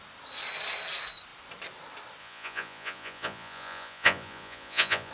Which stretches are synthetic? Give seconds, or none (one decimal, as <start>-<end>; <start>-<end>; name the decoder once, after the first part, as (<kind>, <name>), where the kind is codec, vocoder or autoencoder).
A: 2.2-5.1 (vocoder, Vocos)